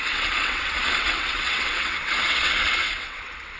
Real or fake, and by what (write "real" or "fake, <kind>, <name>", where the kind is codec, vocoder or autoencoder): fake, vocoder, WaveNeXt